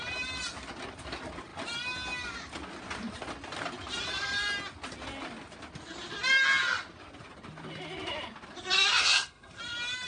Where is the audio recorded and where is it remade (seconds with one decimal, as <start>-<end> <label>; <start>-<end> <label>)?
0.0-9.0 recorded; 9.0-9.6 remade; 9.6-10.1 recorded